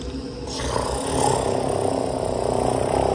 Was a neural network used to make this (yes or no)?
no